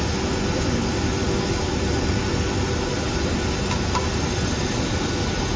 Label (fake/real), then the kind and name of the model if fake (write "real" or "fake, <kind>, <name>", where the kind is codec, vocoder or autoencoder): real